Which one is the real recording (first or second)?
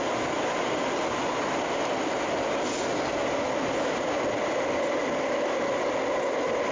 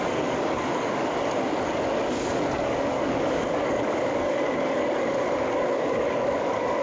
first